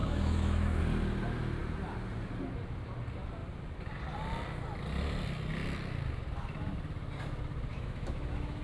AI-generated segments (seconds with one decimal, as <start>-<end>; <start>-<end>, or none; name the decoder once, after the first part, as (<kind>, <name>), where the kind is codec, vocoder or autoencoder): 0.0-0.8 (autoencoder, DAC-VAE); 7.7-8.6